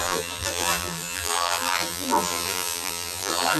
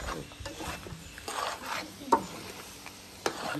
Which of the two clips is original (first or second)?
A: second